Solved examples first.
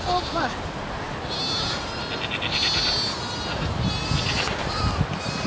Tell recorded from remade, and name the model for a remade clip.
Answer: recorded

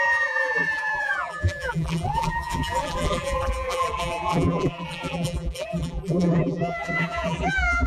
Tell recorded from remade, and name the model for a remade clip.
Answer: remade, vocoder, BigVGAN v2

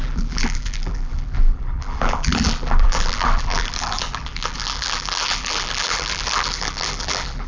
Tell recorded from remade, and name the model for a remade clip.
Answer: remade, vocoder, BigVGAN v2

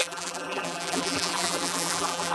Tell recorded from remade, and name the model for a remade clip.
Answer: remade, vocoder, BigVGAN v2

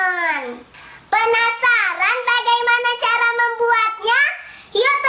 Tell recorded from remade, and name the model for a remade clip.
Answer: recorded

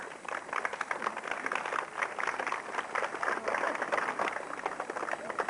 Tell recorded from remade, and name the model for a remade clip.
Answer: recorded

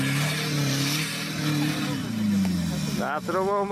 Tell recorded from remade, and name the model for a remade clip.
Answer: recorded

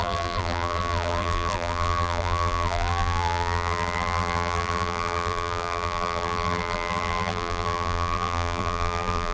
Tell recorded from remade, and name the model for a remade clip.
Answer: remade, vocoder, BigVGAN v2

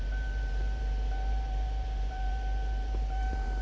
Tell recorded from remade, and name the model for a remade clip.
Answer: remade, vocoder, BigVGAN v2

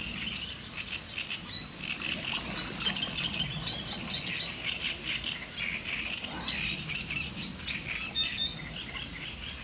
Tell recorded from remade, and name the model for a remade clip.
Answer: recorded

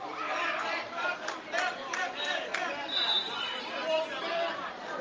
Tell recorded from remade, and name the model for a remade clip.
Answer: remade, vocoder, BigVGAN v2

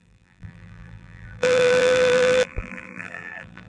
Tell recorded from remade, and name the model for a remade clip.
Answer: remade, vocoder, BigVGAN v2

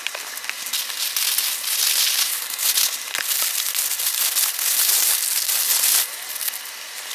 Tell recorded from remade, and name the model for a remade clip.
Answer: recorded